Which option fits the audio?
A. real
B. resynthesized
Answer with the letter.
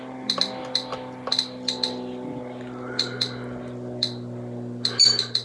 A